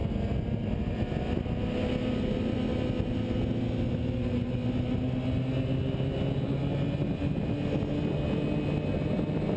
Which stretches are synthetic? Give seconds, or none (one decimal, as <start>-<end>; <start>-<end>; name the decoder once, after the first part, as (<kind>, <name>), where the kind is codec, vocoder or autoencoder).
none